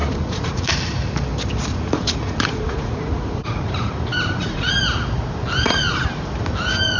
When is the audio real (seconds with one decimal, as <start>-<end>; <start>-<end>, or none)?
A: 0.7-1.7; 4.7-7.0